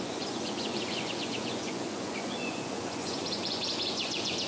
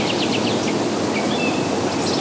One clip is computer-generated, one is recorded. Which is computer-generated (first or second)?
first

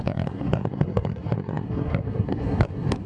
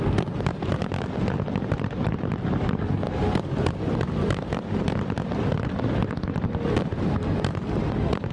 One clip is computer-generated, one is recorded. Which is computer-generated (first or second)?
first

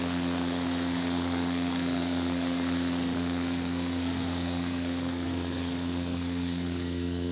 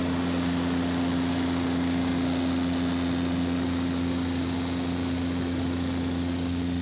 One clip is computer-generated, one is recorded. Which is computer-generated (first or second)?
first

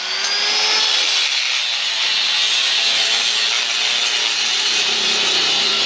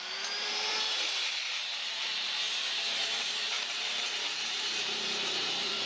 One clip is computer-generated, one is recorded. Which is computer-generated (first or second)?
second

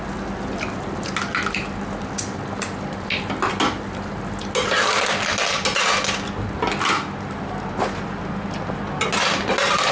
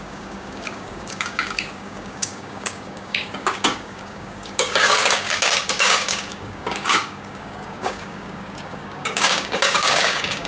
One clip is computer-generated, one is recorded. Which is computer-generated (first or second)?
second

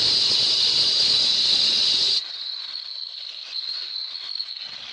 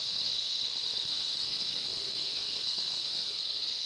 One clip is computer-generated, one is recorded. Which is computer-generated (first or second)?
second